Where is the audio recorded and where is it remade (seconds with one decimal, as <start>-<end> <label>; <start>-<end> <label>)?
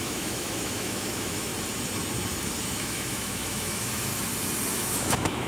0.0-1.5 remade; 1.5-2.6 recorded; 2.6-4.1 remade; 4.1-4.7 recorded; 4.7-5.5 remade